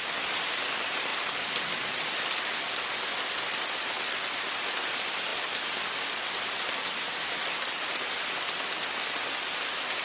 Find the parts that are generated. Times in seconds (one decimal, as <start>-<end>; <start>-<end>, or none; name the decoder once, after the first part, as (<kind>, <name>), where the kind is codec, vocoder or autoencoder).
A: none